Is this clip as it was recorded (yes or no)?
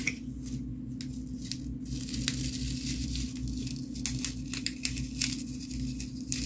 yes